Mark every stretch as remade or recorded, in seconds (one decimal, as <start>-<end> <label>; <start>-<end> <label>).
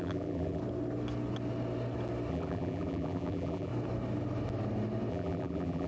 0.0-0.6 remade; 0.6-2.3 recorded; 2.3-3.7 remade; 3.7-5.1 recorded; 5.1-5.9 remade